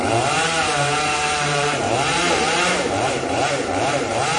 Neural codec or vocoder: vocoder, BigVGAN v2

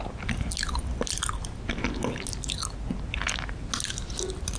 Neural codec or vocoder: none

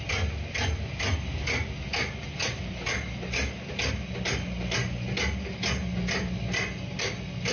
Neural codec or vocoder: none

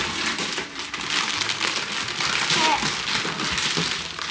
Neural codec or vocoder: none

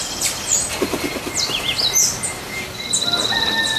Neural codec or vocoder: none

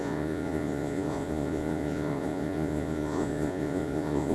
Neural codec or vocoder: vocoder, Vocos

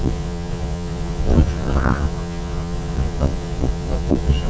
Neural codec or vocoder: vocoder, Vocos